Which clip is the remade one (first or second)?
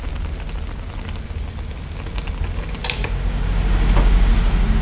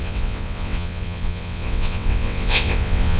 second